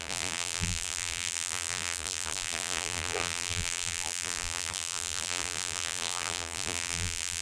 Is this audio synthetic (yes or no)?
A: yes